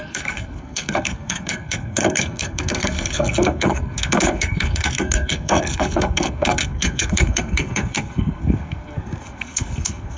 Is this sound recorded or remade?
remade